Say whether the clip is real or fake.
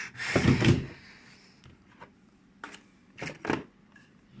real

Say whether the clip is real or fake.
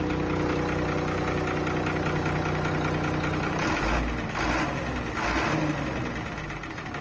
real